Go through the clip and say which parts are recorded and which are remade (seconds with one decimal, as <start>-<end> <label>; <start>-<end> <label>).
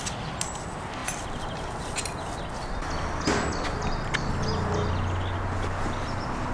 0.0-6.5 recorded